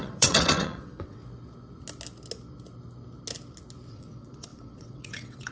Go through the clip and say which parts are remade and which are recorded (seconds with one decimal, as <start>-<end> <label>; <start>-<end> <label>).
0.0-1.2 remade; 1.2-3.9 recorded; 3.9-5.5 remade